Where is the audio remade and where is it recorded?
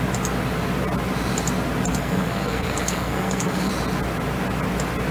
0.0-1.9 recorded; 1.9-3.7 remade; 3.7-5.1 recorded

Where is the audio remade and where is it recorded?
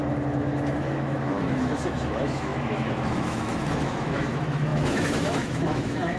0.0-6.2 remade